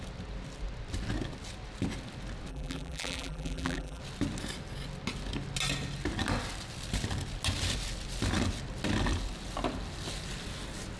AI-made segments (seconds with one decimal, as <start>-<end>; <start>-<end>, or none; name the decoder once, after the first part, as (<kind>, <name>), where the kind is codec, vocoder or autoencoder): 2.5-4.0 (vocoder, BigVGAN v2)